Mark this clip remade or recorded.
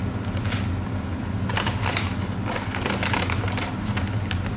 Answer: recorded